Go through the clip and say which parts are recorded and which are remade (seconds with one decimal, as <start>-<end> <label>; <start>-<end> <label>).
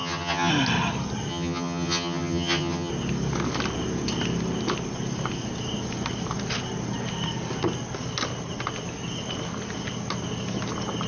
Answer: 0.0-0.5 remade; 0.5-1.3 recorded; 1.3-2.9 remade; 2.9-11.1 recorded